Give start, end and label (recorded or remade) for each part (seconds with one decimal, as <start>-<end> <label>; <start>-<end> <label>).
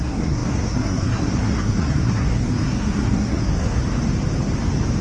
0.0-3.8 remade; 3.8-5.0 recorded